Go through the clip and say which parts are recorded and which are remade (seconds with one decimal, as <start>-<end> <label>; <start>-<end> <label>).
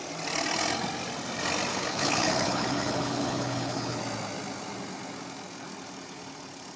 0.0-1.7 recorded; 1.7-4.0 remade; 4.0-6.8 recorded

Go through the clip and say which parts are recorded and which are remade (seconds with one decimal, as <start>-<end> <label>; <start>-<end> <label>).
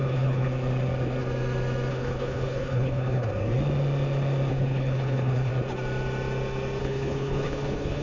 0.0-0.5 remade; 0.5-1.9 recorded; 1.9-3.3 remade; 3.3-4.5 recorded; 4.5-5.5 remade; 5.5-6.8 recorded; 6.8-8.0 remade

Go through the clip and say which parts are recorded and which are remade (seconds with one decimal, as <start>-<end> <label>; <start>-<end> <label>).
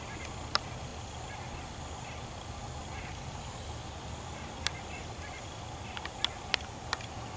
0.0-7.4 recorded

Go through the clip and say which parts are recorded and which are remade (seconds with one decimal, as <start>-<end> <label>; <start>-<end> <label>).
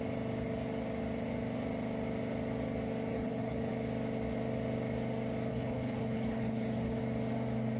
0.0-3.1 recorded; 3.1-3.7 remade; 3.7-5.5 recorded; 5.5-7.0 remade; 7.0-7.8 recorded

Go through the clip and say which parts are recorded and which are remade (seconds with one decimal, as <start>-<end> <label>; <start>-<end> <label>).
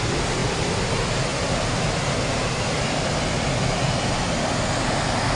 0.0-5.4 recorded